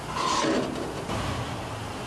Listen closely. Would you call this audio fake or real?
real